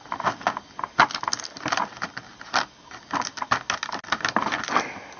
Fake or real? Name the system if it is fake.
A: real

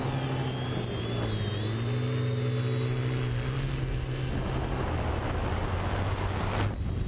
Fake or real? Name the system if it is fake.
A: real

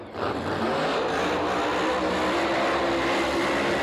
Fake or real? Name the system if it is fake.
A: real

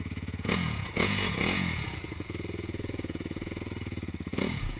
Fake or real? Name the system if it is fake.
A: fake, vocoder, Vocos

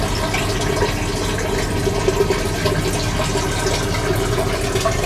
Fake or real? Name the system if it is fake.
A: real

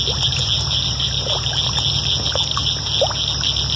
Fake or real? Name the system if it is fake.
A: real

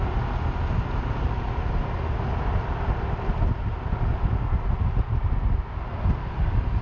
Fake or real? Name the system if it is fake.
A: real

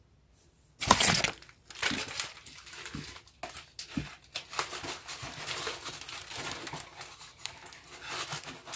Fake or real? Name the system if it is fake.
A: real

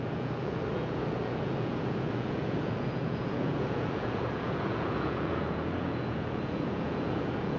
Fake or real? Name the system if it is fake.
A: fake, vocoder, Vocos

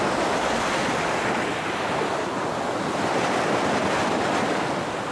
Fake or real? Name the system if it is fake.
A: real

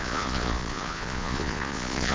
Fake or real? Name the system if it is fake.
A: fake, vocoder, Vocos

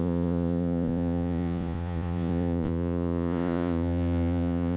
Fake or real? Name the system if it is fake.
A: fake, vocoder, Vocos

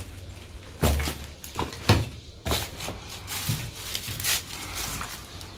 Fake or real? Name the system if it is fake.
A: real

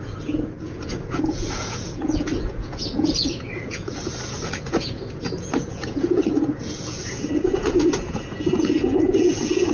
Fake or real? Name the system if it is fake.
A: fake, vocoder, Vocos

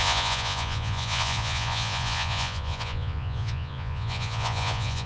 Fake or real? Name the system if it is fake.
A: fake, vocoder, Vocos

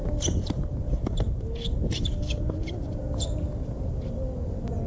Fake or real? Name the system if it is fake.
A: real